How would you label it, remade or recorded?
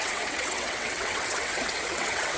remade